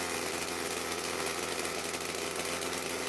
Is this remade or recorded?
recorded